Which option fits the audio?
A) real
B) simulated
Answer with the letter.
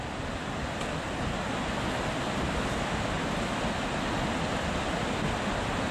A